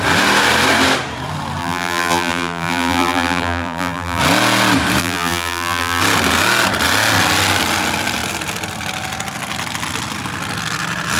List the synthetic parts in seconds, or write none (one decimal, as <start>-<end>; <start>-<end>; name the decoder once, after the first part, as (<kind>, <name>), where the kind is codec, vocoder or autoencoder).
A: 1.6-4.2 (vocoder, BigVGAN v2); 5.0-6.0